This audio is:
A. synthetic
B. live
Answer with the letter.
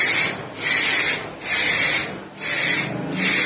B